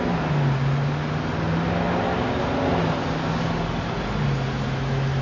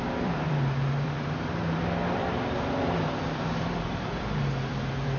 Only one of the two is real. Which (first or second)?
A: first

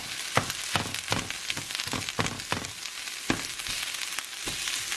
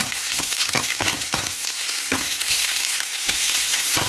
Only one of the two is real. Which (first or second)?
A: first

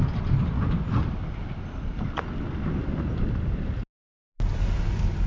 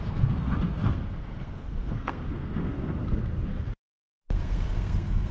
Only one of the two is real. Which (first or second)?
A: first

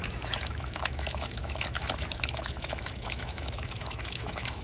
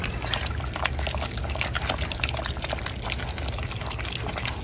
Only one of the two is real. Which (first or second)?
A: second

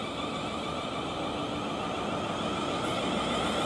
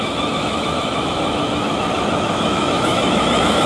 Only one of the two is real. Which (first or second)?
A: first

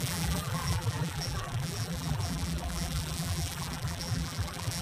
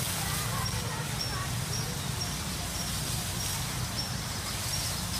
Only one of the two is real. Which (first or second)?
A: second